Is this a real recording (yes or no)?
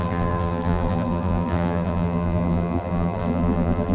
no